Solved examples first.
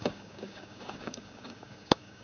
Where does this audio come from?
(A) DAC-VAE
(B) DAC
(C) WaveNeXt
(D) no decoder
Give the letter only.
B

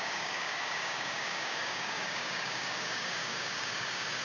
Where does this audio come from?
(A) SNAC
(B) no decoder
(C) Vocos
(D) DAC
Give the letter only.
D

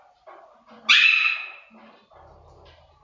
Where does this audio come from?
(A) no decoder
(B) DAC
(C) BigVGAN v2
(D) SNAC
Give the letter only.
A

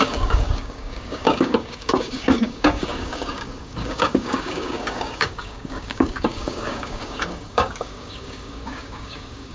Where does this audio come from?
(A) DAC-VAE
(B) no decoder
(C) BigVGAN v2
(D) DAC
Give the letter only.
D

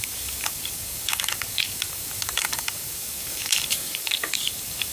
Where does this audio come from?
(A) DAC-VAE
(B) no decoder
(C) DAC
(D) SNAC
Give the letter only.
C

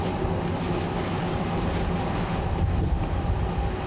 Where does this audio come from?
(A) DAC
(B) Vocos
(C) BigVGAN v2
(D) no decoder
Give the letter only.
D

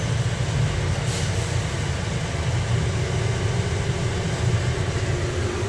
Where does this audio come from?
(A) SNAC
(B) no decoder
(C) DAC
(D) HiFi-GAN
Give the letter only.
B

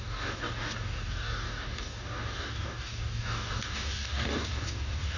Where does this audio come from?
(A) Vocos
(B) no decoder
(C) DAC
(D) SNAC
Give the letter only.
C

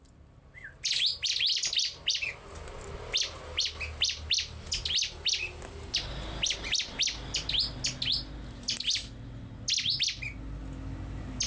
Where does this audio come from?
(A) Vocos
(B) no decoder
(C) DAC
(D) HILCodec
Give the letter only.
B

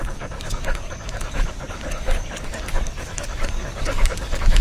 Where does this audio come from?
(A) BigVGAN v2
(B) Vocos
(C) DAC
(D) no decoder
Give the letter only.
C